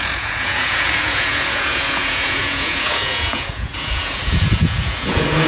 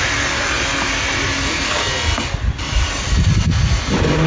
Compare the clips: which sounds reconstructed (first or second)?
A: first